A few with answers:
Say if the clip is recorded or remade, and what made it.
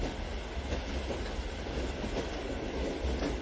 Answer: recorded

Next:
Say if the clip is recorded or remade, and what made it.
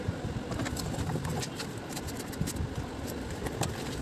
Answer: recorded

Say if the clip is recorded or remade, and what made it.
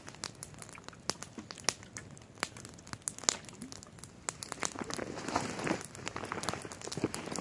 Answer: recorded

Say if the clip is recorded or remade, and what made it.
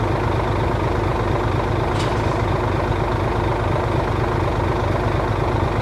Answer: recorded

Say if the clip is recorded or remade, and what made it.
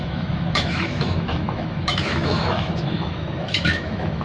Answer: remade, autoencoder, DAC-VAE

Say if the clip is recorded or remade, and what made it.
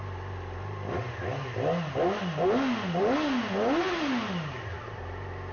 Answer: recorded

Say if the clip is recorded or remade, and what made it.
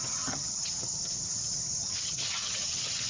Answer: remade, vocoder, HiFi-GAN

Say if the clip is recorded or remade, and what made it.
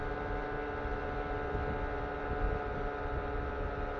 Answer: recorded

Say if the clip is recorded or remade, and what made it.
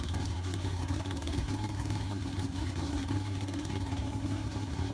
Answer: remade, codec, SNAC